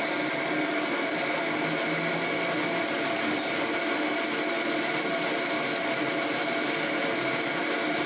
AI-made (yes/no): no